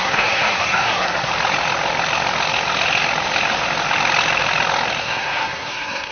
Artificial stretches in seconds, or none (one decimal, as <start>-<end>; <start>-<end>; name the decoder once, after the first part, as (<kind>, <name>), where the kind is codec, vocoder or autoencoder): 0.0-1.3 (codec, SNAC); 5.0-6.1